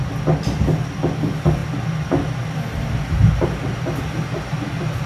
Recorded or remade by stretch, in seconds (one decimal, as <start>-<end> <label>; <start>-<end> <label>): 0.0-5.1 recorded

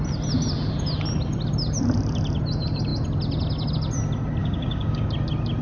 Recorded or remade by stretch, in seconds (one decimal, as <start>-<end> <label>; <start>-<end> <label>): 0.0-4.4 recorded; 4.4-5.1 remade; 5.1-5.6 recorded